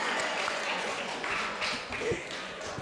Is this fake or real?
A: fake